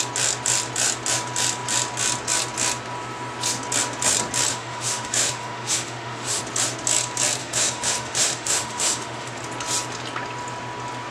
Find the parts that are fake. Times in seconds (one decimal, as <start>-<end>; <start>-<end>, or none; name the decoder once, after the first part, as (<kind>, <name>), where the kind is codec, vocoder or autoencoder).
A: 4.5-6.4 (autoencoder, DAC-VAE); 7.4-9.4